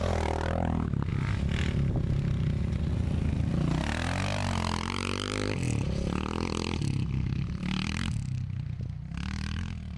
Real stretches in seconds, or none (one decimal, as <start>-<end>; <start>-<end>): 0.0-10.0